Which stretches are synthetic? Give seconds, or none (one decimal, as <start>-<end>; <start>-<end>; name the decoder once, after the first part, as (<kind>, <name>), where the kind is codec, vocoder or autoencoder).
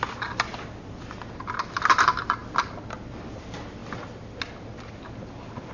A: none